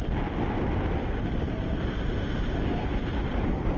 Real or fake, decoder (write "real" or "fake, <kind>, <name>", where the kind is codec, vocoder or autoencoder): real